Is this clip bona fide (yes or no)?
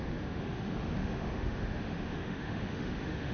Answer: no